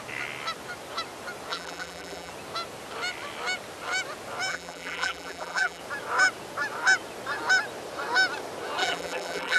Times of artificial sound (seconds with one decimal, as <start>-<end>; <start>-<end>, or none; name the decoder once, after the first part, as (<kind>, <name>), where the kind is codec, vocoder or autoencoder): 1.5-2.3 (vocoder, BigVGAN v2); 4.5-5.8; 8.8-9.6